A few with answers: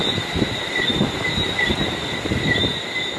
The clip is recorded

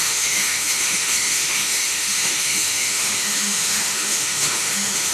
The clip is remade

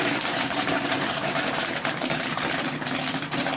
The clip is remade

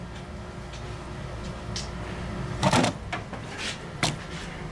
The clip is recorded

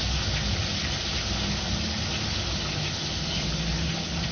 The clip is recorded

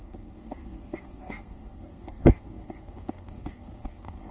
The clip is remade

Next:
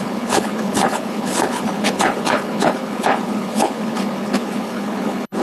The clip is remade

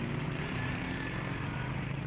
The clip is recorded